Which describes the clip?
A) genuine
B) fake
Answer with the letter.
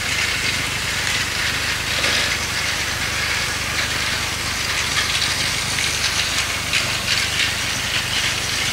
A